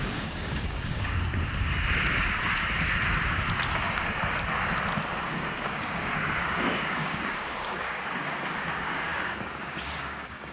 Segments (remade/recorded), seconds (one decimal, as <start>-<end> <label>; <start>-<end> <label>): 0.0-1.3 remade; 1.3-5.2 recorded; 5.2-10.5 remade